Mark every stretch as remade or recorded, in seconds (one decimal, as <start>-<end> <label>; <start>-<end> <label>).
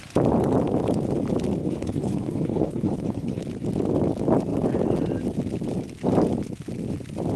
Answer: 0.0-1.6 recorded; 1.6-3.4 remade; 3.4-7.4 recorded